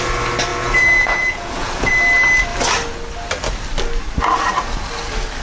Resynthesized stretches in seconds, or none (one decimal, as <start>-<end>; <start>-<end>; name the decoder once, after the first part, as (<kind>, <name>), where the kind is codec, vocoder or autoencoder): 0.5-1.9 (vocoder, Vocos)